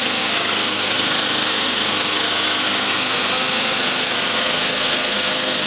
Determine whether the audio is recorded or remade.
remade